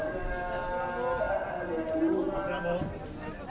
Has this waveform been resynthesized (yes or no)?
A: no